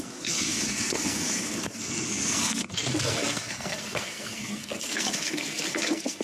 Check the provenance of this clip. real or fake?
fake